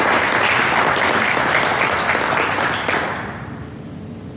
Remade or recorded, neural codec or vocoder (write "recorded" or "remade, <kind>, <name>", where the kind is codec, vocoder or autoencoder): recorded